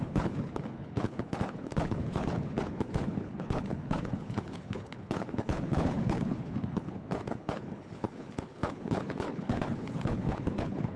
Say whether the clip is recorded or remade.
remade